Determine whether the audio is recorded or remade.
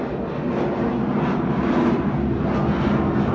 recorded